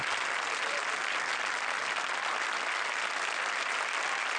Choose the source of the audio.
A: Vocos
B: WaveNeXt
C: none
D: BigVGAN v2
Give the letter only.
C